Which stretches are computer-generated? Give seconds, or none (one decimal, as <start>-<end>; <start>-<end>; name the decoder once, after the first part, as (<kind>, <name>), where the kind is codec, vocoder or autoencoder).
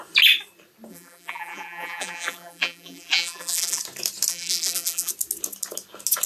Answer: 0.9-3.8 (vocoder, BigVGAN v2); 4.3-5.1